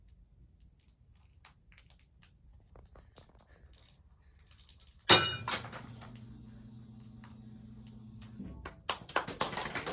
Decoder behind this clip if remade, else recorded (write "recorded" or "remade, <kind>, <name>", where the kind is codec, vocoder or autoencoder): recorded